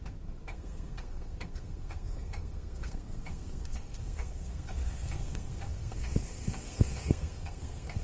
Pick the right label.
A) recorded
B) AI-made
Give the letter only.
B